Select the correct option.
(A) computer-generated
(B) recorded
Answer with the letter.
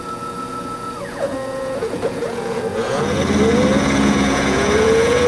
A